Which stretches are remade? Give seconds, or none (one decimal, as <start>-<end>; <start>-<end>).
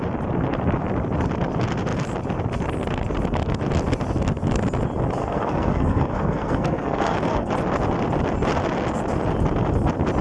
5.2-7.5